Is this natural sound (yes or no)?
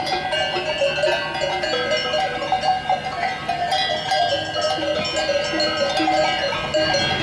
yes